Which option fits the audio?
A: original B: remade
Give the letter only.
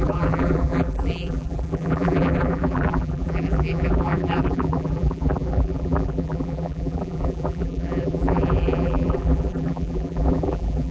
B